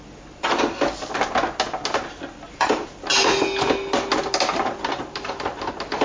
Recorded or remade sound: recorded